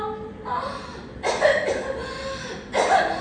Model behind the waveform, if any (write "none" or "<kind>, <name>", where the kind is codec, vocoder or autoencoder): none